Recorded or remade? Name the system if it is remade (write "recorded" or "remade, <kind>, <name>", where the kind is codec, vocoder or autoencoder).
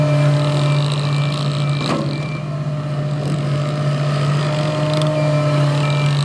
recorded